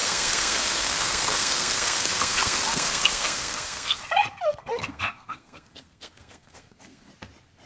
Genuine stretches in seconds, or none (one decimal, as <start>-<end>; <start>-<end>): 4.0-4.5; 7.1-7.7